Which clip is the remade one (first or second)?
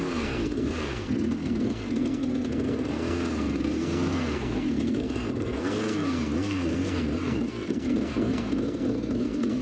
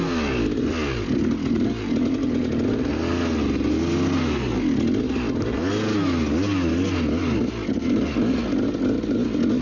first